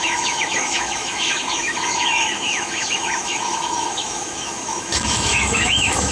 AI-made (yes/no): yes